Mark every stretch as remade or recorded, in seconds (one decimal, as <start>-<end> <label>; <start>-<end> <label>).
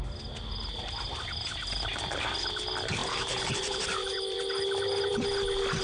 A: 0.0-3.0 recorded; 3.0-4.4 remade; 4.4-5.8 recorded